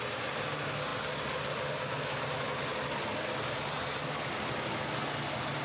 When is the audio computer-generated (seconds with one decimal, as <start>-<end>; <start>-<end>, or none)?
none